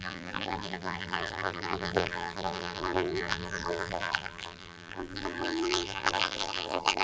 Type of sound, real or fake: fake